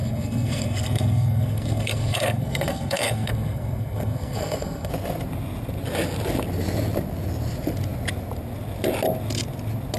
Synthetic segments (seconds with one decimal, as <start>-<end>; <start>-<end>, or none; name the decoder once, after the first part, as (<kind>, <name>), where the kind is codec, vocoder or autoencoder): 0.0-4.9 (codec, SNAC)